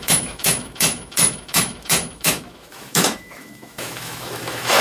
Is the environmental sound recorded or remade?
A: remade